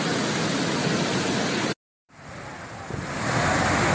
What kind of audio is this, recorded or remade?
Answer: recorded